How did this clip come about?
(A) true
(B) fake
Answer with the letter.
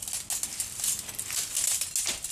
A